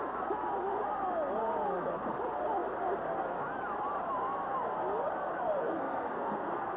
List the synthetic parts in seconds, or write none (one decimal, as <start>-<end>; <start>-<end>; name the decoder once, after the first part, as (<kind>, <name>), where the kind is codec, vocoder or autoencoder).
5.6-6.8 (codec, SNAC)